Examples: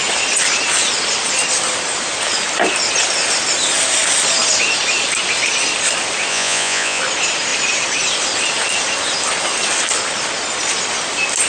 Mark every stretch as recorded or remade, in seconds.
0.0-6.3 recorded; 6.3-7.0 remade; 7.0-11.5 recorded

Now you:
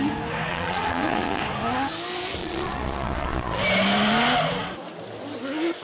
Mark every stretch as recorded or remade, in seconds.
0.0-0.5 recorded; 0.5-1.4 remade; 1.4-2.4 recorded; 2.4-3.6 remade; 3.6-5.8 recorded

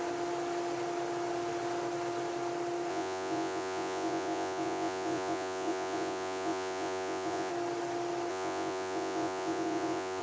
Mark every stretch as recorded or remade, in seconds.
0.0-2.9 recorded; 2.9-7.5 remade; 7.5-8.3 recorded; 8.3-10.2 remade

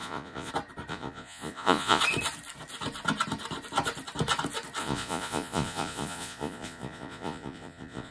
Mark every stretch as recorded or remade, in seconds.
0.0-0.5 remade; 0.5-0.9 recorded; 0.9-2.0 remade; 2.0-4.8 recorded; 4.8-8.1 remade

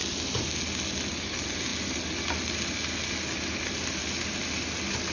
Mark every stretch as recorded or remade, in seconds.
0.0-5.1 recorded

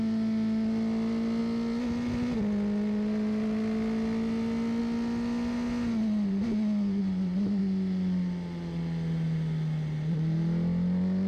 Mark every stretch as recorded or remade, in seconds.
0.0-11.3 recorded